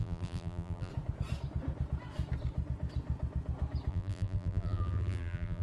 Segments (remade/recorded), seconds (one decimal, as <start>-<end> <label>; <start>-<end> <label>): 0.0-0.9 remade; 0.9-3.9 recorded; 3.9-5.6 remade